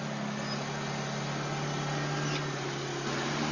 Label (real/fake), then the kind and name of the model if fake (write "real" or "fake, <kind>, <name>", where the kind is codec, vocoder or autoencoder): real